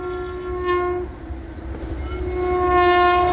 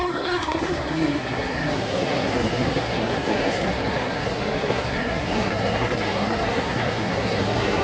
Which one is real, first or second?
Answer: first